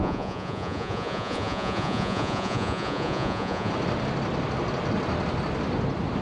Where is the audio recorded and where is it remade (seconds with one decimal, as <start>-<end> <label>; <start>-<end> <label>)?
0.0-3.7 remade; 3.7-6.2 recorded